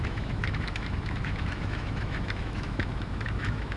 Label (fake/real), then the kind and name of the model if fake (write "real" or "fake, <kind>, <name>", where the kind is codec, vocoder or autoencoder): fake, autoencoder, DAC-VAE